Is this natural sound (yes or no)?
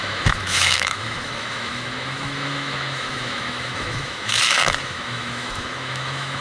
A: no